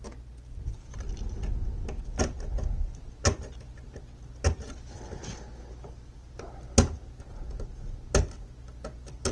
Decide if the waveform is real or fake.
real